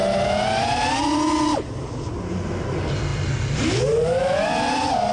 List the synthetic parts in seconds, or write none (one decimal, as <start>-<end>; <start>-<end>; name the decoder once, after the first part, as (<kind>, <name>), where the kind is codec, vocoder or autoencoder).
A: none